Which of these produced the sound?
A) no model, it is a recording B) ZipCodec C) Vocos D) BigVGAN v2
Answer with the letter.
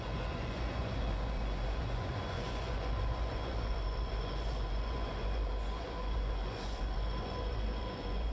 C